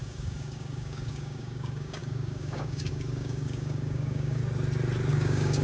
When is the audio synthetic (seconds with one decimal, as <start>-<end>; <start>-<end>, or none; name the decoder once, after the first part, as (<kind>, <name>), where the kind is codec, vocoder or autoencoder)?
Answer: 0.0-4.4 (codec, DAC); 5.1-5.6